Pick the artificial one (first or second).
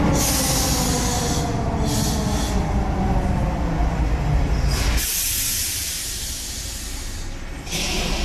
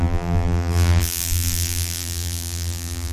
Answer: second